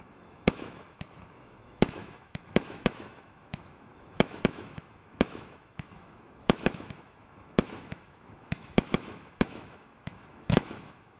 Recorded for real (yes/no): no